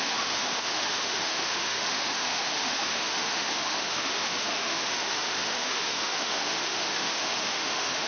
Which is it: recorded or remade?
remade